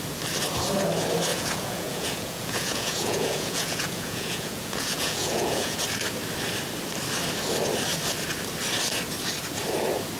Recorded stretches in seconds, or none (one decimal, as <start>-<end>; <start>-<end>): 0.0-1.3; 5.8-10.2